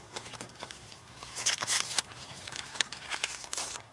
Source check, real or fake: fake